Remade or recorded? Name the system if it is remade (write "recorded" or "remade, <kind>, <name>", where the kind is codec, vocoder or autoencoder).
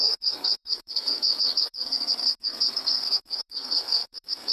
remade, codec, SNAC